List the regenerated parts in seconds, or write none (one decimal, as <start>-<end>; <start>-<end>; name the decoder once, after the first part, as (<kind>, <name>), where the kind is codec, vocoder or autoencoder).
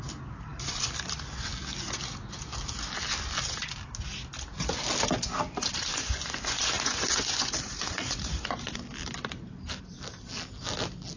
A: 5.9-8.8 (vocoder, Vocos)